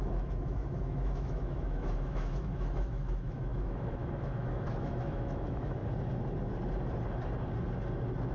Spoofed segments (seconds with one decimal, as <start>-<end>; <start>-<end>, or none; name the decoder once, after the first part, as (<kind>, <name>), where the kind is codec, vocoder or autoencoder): 0.0-5.8 (autoencoder, DAC-VAE)